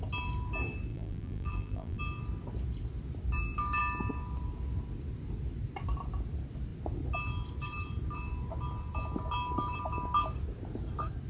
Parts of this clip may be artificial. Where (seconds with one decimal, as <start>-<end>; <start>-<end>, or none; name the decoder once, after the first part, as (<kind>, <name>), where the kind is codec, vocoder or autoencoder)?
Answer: 0.9-2.0 (vocoder, BigVGAN v2)